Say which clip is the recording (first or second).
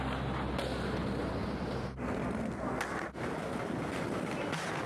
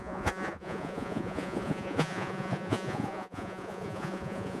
first